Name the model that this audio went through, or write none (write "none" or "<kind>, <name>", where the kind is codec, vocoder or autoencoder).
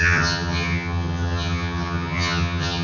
vocoder, HiFi-GAN